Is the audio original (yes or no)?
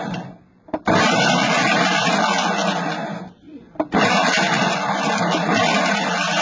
yes